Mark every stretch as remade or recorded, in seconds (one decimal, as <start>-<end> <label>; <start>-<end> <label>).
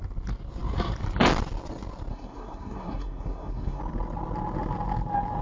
0.0-2.1 recorded; 2.1-3.8 remade; 3.8-5.4 recorded